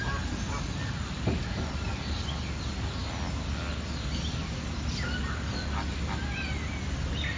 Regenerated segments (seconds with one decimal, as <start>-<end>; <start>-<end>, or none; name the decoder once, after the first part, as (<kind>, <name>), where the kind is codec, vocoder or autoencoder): none